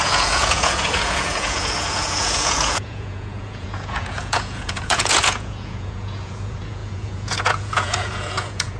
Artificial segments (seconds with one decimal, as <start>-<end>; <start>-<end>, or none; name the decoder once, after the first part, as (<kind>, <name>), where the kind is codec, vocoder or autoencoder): 0.0-8.8 (vocoder, Vocos)